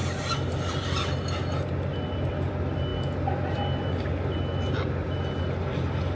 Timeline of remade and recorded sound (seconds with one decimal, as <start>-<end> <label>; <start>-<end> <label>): 0.0-6.2 recorded